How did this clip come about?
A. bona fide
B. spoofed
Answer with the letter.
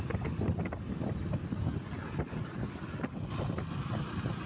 A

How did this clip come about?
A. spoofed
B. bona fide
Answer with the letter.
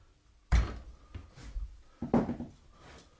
B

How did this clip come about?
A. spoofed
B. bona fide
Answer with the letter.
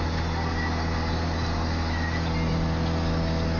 B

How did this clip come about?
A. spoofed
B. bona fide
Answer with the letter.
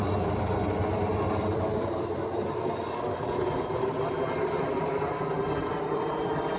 B